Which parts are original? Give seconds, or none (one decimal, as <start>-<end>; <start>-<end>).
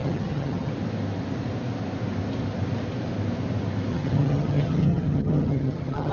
0.7-3.9